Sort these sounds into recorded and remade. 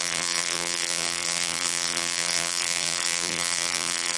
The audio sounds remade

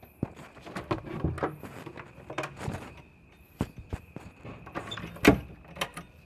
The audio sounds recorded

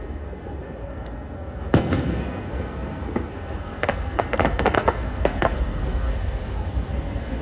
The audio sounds remade